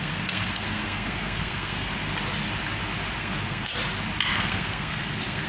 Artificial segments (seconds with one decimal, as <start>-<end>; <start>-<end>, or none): 0.0-2.0; 3.2-3.7; 4.3-5.5